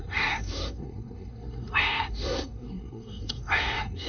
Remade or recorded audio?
remade